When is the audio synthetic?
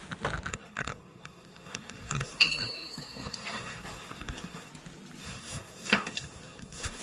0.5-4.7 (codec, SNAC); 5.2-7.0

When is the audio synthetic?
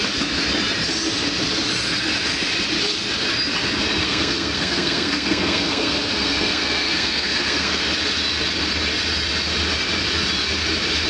4.0-7.8 (codec, SNAC)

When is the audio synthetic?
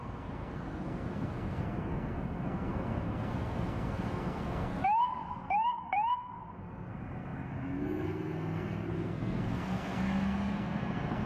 0.0-11.3 (codec, SNAC)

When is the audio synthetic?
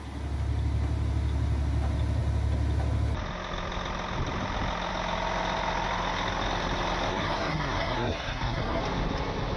7.1-8.8 (codec, SNAC)